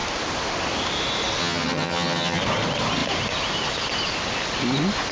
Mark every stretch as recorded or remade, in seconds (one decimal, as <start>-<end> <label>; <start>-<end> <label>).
0.0-1.4 recorded; 1.4-2.4 remade; 2.4-5.1 recorded